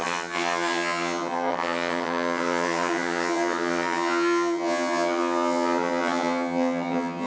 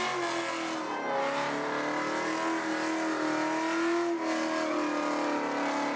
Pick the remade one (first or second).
first